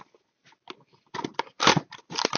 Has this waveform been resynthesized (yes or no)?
no